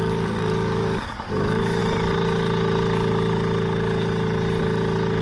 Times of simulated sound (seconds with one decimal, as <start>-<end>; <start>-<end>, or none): 0.0-1.8